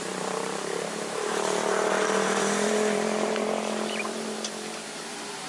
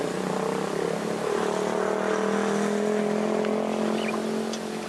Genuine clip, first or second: second